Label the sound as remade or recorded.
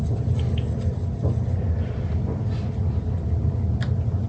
recorded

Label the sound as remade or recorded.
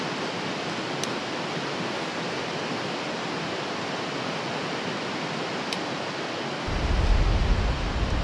recorded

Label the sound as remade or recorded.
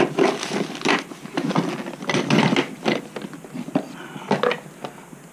recorded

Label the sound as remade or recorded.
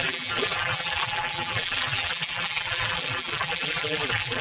remade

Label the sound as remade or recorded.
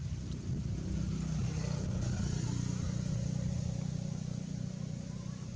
recorded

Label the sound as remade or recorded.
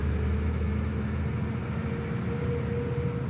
recorded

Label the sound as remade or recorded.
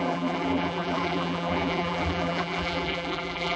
remade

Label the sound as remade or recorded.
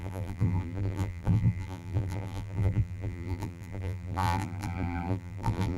remade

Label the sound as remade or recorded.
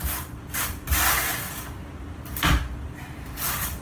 remade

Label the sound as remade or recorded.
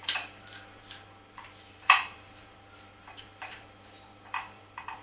remade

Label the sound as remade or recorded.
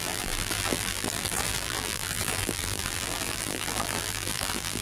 remade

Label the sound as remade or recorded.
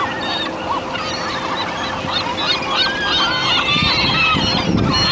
recorded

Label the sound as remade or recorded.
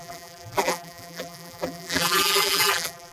remade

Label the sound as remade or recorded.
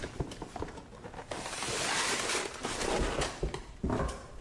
remade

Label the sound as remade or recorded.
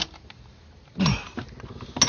recorded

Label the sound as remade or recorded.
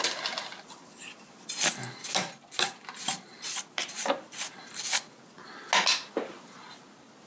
recorded